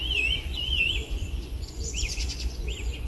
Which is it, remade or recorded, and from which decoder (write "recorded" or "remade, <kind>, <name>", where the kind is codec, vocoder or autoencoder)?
remade, vocoder, Vocos